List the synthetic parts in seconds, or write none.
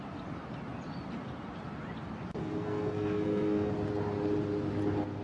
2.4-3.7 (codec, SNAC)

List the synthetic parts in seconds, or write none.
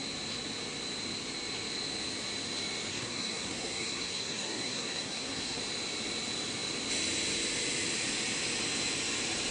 2.9-5.6 (codec, SNAC)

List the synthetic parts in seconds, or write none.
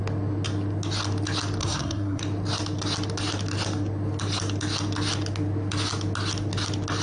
1.6-2.2 (codec, SNAC)